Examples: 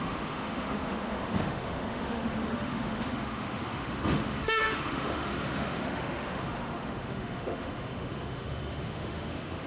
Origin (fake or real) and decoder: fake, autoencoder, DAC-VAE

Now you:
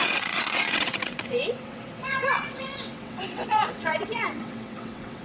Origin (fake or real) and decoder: fake, vocoder, WaveNeXt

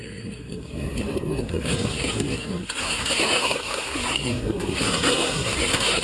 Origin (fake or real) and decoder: fake, codec, SNAC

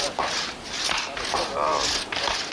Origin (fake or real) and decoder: real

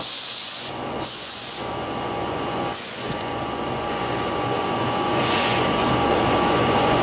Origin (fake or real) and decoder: fake, vocoder, Vocos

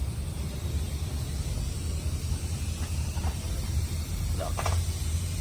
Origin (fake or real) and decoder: fake, vocoder, BigVGAN v2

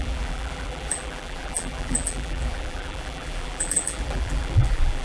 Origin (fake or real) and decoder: fake, vocoder, BigVGAN v2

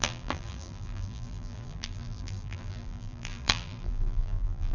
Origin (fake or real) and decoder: fake, vocoder, BigVGAN v2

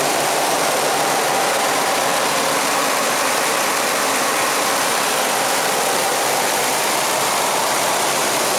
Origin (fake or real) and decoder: fake, vocoder, BigVGAN v2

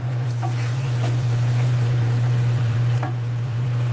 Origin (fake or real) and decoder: fake, vocoder, Vocos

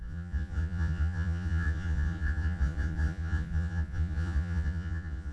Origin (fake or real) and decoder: fake, vocoder, Vocos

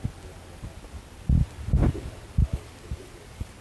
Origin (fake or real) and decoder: real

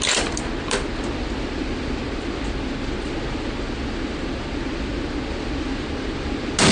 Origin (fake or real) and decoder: real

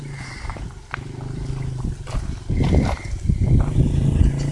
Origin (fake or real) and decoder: real